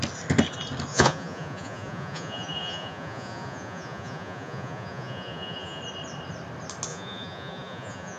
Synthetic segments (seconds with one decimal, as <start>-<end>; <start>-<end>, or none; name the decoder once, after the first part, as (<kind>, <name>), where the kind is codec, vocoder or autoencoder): 0.9-5.8 (vocoder, Vocos); 6.9-8.2